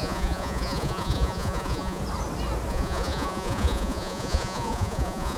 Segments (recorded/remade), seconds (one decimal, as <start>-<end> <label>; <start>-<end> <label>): 0.0-2.0 remade; 2.0-2.7 recorded; 2.7-5.4 remade